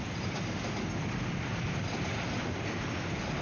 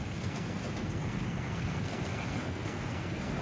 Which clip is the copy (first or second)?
second